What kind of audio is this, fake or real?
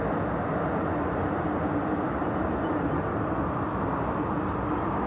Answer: real